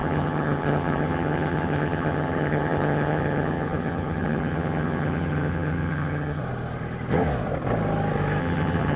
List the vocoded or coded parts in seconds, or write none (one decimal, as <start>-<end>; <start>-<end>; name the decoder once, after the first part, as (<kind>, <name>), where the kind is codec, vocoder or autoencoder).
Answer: 0.0-6.4 (vocoder, HiFi-GAN); 8.4-9.0